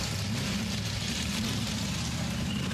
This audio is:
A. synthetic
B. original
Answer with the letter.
A